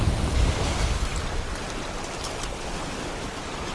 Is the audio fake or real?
fake